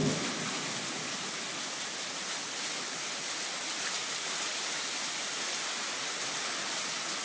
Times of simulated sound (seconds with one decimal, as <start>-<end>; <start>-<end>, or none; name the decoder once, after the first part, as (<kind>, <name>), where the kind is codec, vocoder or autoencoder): none